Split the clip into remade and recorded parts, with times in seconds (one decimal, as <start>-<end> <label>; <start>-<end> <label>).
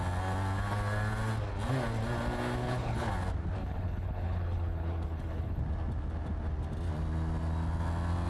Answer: 0.0-2.6 recorded; 2.6-3.1 remade; 3.1-3.6 recorded; 3.6-5.6 remade; 5.6-8.3 recorded